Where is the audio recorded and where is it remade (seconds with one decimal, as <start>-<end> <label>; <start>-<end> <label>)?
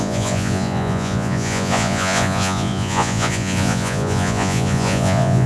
0.0-5.5 remade